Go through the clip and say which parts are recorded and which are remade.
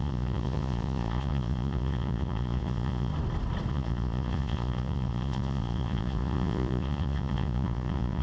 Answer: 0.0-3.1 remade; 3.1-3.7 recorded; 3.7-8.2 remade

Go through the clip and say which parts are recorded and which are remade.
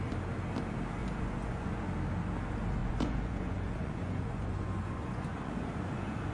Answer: 0.0-1.0 recorded; 1.0-1.8 remade; 1.8-2.8 recorded; 2.8-6.3 remade